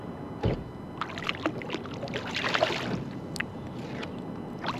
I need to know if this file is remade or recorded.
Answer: recorded